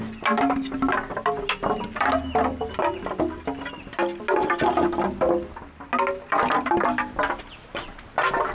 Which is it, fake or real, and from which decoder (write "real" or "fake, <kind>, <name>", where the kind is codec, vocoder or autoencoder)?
real